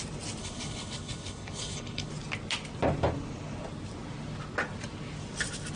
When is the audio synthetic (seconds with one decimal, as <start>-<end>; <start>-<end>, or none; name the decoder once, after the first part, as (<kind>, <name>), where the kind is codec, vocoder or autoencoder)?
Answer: 0.4-2.1 (codec, HILCodec)